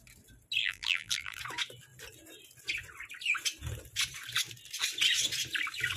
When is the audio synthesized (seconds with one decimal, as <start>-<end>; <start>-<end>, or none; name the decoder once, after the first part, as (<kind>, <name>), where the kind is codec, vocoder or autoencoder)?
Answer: 0.6-1.4 (vocoder, BigVGAN v2)